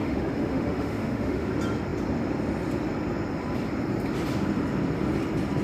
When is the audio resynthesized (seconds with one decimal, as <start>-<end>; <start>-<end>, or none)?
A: 0.0-1.5

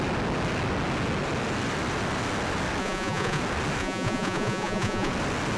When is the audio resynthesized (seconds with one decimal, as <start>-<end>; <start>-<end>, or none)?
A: 2.8-3.4; 3.8-5.1

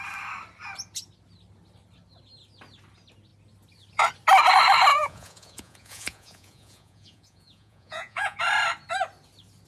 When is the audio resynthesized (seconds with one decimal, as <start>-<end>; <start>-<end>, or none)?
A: 4.9-8.4

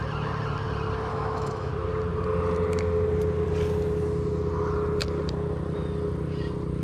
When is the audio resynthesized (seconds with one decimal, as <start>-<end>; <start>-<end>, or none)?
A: 1.1-1.7

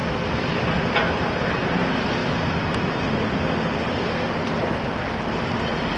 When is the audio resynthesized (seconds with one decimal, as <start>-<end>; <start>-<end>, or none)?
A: none